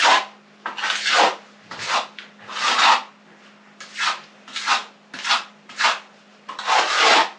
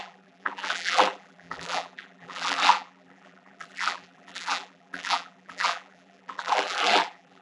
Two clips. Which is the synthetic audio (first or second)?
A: second